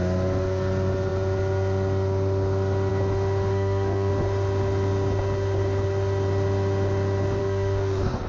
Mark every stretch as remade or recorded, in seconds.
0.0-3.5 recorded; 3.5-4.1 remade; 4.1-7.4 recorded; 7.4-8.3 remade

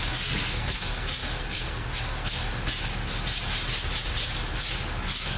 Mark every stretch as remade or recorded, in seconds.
0.0-2.5 remade; 2.5-5.0 recorded; 5.0-5.4 remade

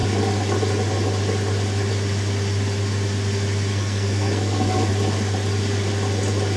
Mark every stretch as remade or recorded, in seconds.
0.0-3.7 recorded; 3.7-4.9 remade; 4.9-6.6 recorded